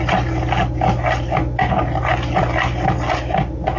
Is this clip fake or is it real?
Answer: real